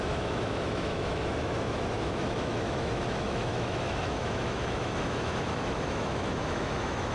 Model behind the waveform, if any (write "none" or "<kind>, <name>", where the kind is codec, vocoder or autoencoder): autoencoder, DAC-VAE